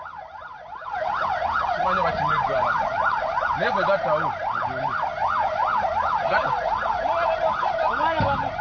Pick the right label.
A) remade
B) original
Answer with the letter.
B